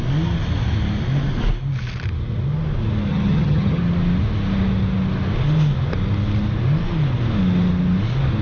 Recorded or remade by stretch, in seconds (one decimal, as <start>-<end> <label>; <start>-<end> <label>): 0.0-3.1 recorded; 3.1-3.8 remade; 3.8-8.4 recorded